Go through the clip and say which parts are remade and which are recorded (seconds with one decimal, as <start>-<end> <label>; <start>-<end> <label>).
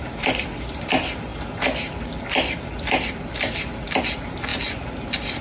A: 0.0-5.4 recorded